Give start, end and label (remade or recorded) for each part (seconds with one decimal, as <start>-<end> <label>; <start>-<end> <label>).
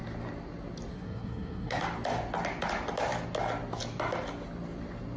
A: 0.0-0.9 recorded; 0.9-1.8 remade; 1.8-5.2 recorded